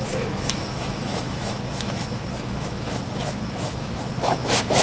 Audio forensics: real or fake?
fake